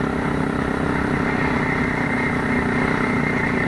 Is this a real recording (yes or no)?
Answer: yes